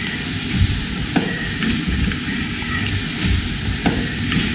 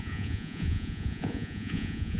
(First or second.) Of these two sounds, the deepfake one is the second